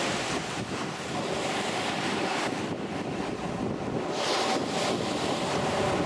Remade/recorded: recorded